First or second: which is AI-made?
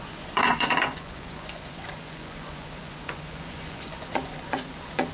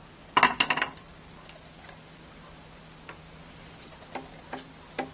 first